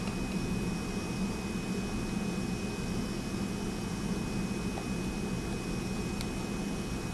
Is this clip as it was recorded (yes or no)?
yes